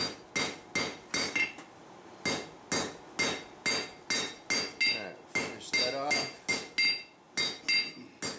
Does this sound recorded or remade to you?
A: recorded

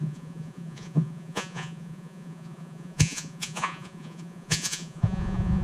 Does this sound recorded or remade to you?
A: remade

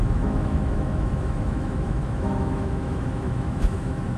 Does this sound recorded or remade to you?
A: remade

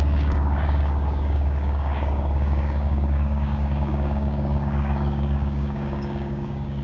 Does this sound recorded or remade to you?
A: remade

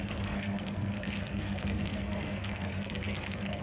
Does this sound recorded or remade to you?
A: remade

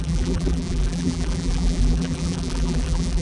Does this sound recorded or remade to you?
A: remade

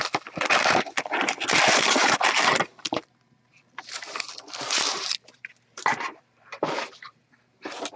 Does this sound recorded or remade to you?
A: remade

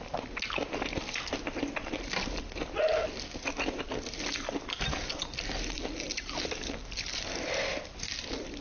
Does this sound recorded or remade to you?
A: recorded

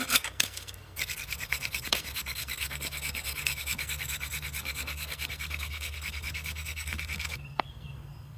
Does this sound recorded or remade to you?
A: remade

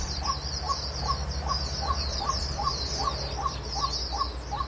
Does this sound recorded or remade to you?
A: recorded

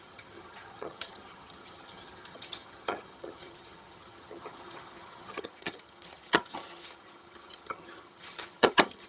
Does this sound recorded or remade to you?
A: remade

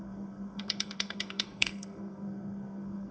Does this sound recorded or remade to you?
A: remade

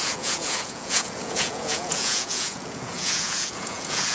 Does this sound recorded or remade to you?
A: remade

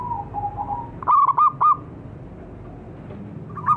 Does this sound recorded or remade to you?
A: recorded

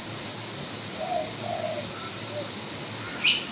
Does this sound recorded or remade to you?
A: recorded